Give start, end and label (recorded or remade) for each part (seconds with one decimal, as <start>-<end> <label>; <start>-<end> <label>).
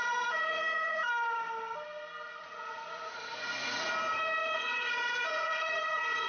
0.0-1.1 remade; 1.1-2.4 recorded; 2.4-3.9 remade; 3.9-4.4 recorded; 4.4-6.3 remade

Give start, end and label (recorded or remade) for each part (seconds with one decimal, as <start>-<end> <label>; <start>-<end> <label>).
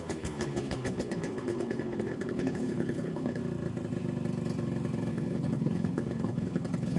0.0-3.4 remade; 3.4-5.1 recorded; 5.1-7.0 remade